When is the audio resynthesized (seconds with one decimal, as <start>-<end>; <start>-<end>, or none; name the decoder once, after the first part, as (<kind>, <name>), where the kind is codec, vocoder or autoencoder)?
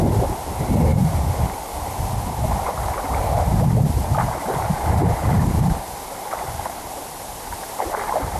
none